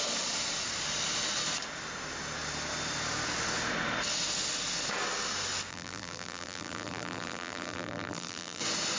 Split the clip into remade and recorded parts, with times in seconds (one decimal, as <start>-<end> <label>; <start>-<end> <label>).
0.0-5.7 recorded; 5.7-8.6 remade; 8.6-9.0 recorded